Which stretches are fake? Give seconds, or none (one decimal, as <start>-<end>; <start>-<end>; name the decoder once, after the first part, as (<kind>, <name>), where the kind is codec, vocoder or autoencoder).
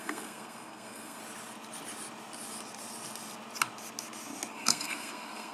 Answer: 0.0-1.2 (codec, SNAC); 4.5-5.5